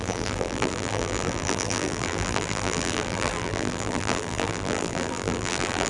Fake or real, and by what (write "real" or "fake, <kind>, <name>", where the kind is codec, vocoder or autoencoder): fake, vocoder, BigVGAN v2